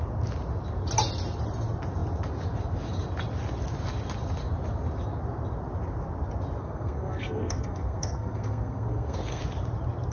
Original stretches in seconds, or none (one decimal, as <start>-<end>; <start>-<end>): 0.0-6.6; 9.4-10.1